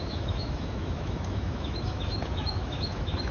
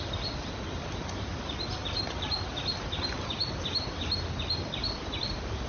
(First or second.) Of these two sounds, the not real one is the first